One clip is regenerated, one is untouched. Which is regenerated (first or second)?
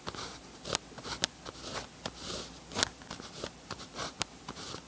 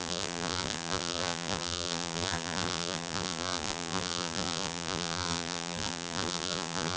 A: second